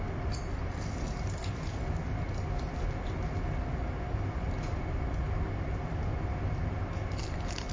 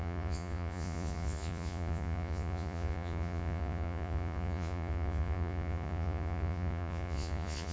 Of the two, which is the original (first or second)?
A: first